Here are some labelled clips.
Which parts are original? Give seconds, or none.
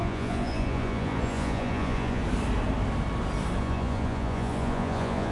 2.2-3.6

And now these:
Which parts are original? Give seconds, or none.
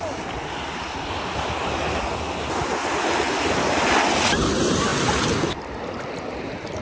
0.0-6.8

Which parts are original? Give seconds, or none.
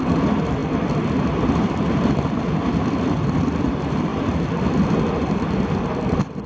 none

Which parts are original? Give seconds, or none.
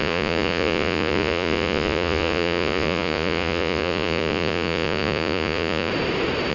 5.9-6.5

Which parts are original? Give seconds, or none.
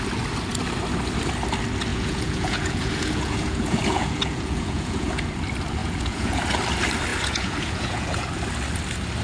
0.0-1.9; 5.3-5.8; 6.4-7.1; 8.2-9.2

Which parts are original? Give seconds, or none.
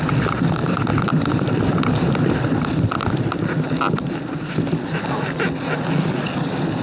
0.0-0.6; 1.5-6.8